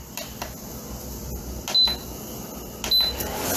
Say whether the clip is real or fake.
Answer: real